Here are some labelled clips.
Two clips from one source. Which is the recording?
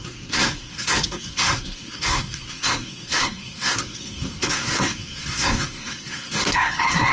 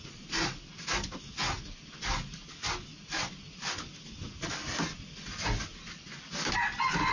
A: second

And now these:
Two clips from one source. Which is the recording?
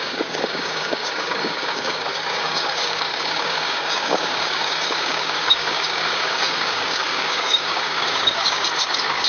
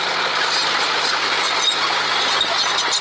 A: second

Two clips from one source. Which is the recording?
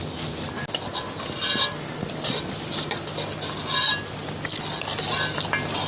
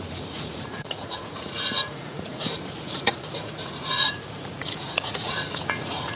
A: first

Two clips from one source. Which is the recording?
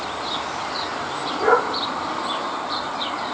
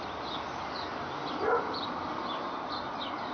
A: second